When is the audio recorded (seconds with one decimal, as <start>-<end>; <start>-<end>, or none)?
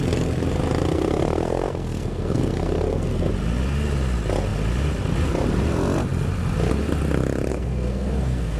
0.0-0.9; 3.3-7.5